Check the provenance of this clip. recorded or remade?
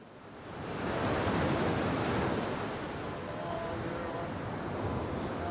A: recorded